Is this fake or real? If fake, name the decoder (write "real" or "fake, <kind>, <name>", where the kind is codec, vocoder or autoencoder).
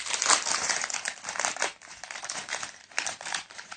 fake, vocoder, BigVGAN v2